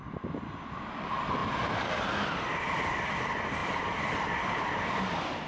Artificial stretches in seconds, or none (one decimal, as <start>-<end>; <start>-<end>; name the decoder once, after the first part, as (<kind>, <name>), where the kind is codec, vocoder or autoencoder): 1.4-3.1 (vocoder, BigVGAN v2); 3.6-4.9